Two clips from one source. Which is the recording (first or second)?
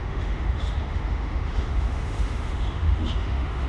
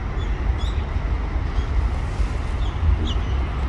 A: second